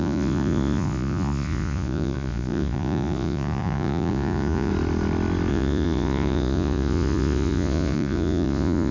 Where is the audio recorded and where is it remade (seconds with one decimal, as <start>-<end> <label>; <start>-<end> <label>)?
0.0-4.7 remade; 4.7-5.5 recorded; 5.5-8.9 remade